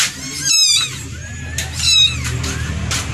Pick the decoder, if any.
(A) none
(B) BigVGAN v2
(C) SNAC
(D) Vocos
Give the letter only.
A